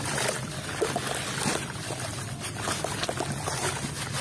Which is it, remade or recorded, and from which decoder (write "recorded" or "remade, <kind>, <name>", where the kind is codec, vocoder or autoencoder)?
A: recorded